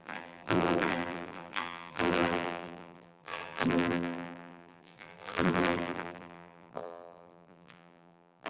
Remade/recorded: remade